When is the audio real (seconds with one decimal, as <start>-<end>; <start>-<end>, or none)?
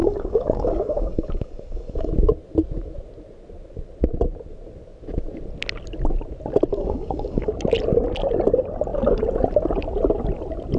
2.1-6.7; 7.5-10.8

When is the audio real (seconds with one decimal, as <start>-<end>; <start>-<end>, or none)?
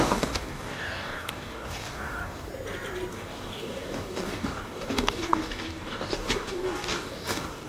2.5-3.1